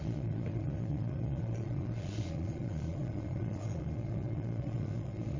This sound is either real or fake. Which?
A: fake